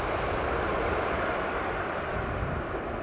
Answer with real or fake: fake